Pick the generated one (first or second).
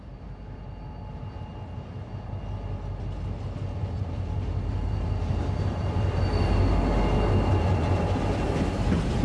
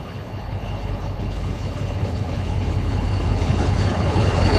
second